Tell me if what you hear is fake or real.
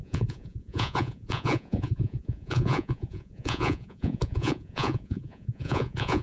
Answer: fake